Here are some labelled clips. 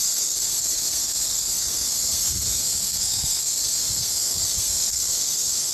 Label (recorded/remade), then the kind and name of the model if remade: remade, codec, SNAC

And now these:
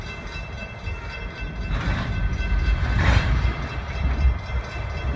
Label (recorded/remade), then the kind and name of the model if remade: remade, vocoder, BigVGAN v2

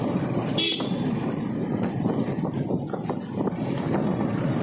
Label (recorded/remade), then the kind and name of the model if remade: remade, vocoder, BigVGAN v2